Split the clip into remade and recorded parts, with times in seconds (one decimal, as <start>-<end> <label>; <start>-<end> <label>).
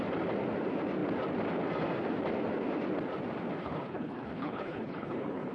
0.0-3.6 recorded; 3.6-5.5 remade